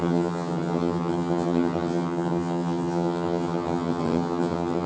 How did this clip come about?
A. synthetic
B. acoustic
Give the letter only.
A